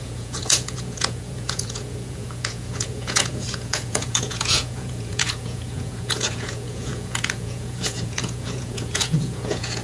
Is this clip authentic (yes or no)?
no